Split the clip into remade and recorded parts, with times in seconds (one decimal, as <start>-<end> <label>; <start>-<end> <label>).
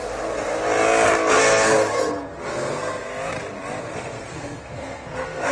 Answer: 0.0-1.3 recorded; 1.3-3.1 remade; 3.1-3.8 recorded; 3.8-5.5 remade